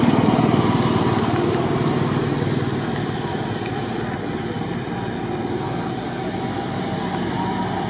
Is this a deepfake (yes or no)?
no